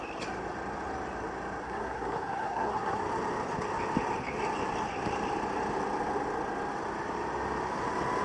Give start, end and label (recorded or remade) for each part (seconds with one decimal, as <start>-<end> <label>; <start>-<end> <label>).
0.0-1.6 recorded; 1.6-3.0 remade; 3.0-8.2 recorded